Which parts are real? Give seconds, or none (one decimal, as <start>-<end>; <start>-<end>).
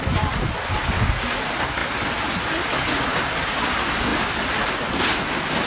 0.0-5.7